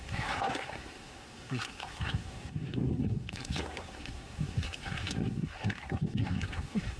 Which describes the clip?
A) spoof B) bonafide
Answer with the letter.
A